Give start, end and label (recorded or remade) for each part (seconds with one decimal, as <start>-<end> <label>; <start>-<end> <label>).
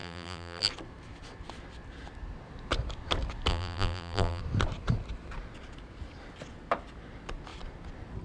0.0-0.7 remade; 0.7-3.5 recorded; 3.5-4.4 remade; 4.4-8.2 recorded